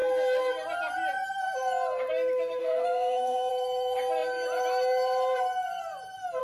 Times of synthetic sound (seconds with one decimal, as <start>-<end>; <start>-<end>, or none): 2.6-3.5